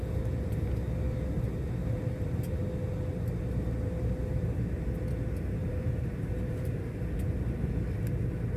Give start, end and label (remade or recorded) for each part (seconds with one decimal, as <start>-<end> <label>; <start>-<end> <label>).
0.0-1.8 recorded; 1.8-2.6 remade; 2.6-5.6 recorded; 5.6-6.9 remade; 6.9-8.6 recorded